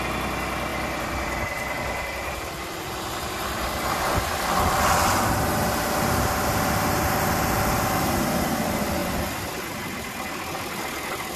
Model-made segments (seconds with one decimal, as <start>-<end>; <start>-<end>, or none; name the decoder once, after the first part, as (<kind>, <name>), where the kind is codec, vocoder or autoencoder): 0.7-4.9 (vocoder, BigVGAN v2)